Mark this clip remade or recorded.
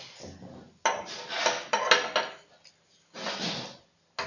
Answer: recorded